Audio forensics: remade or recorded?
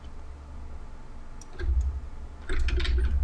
recorded